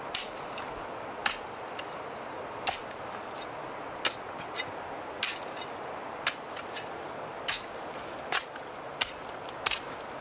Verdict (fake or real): real